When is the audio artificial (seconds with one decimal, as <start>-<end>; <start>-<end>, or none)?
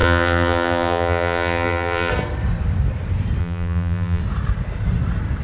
0.0-2.1; 3.4-4.2